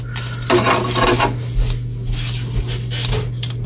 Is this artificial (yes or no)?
no